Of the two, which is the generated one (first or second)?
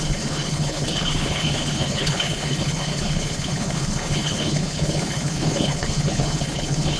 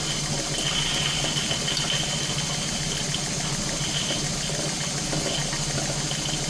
first